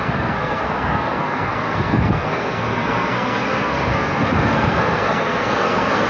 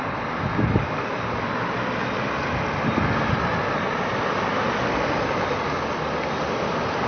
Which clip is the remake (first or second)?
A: first